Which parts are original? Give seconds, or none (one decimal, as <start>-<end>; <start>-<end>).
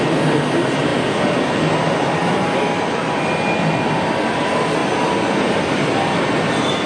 0.0-6.9